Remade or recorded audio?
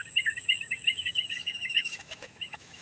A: remade